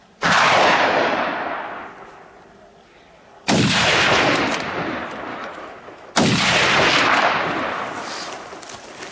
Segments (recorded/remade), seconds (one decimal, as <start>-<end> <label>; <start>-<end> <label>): 0.0-5.3 recorded; 5.3-6.1 remade; 6.1-9.1 recorded